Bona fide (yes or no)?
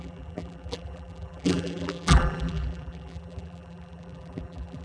no